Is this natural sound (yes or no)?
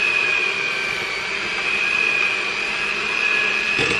no